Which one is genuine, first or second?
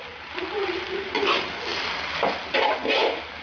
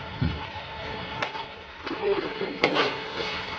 first